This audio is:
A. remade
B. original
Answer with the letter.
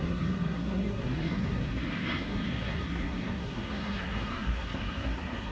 A